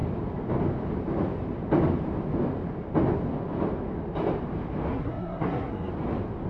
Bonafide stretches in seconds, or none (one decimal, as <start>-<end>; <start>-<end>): 0.0-4.9; 5.9-6.5

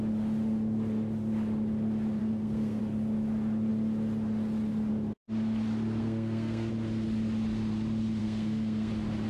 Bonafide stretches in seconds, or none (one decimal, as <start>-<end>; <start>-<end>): 0.0-2.2; 2.8-6.0; 6.7-8.2; 8.9-9.3